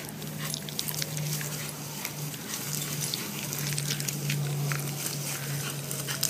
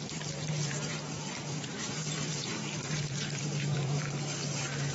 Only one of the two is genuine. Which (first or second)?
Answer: first